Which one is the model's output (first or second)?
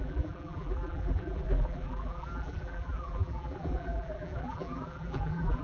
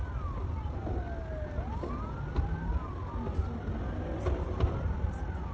first